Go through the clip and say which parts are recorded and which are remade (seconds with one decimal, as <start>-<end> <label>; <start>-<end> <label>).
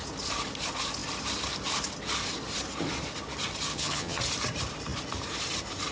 0.0-3.7 recorded; 3.7-4.2 remade; 4.2-5.9 recorded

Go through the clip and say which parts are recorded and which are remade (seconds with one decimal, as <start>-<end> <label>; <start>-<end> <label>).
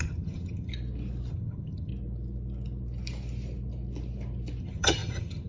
0.0-0.7 remade; 0.7-1.3 recorded; 1.3-1.9 remade; 1.9-4.6 recorded; 4.6-5.5 remade